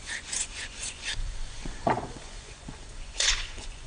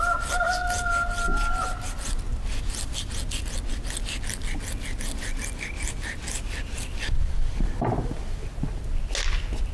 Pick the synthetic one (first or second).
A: first